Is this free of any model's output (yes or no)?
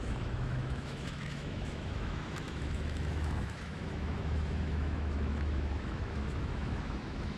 no